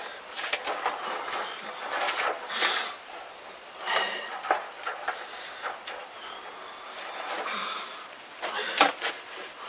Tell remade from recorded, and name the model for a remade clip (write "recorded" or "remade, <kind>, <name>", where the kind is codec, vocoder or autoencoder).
remade, vocoder, BigVGAN v2